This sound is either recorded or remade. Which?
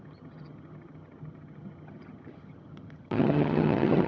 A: remade